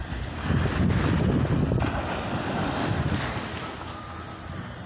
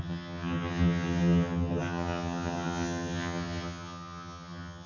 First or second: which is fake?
second